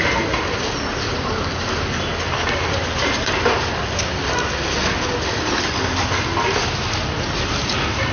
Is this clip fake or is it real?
real